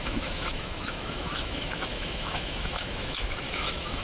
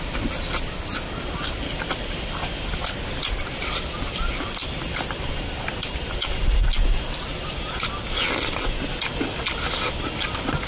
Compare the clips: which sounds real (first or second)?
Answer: second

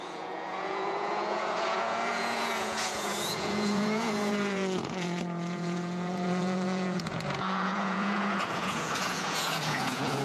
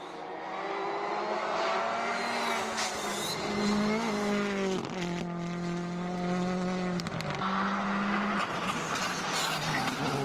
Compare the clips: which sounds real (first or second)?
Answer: second